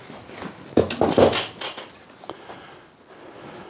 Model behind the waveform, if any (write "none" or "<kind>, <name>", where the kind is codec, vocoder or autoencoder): none